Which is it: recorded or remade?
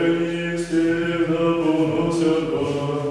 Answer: recorded